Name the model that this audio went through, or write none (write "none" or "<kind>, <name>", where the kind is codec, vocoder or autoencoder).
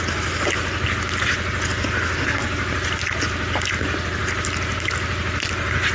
none